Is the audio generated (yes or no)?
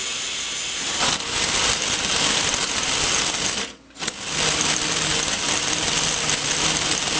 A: no